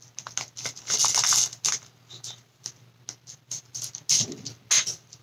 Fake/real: real